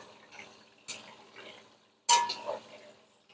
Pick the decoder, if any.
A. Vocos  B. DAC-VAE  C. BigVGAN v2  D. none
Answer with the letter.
D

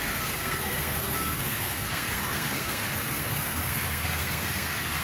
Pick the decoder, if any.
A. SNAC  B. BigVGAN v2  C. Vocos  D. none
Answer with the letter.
A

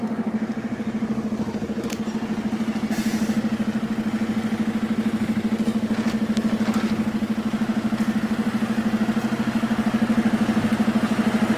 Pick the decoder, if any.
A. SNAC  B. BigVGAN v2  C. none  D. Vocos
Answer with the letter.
C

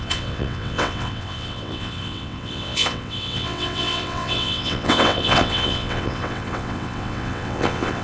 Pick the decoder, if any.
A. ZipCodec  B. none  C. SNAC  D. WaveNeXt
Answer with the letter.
D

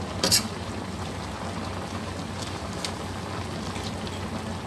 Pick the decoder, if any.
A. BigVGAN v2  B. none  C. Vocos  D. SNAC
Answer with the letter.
B